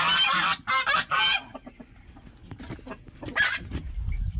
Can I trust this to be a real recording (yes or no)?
yes